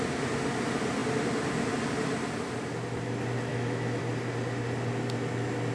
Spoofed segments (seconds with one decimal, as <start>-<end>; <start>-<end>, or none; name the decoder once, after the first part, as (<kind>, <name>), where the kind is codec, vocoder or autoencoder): 3.5-4.0 (autoencoder, DAC-VAE)